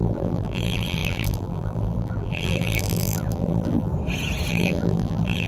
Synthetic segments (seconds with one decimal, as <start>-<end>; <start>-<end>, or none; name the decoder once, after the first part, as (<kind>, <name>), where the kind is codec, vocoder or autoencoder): 0.0-3.9 (vocoder, BigVGAN v2); 4.5-5.5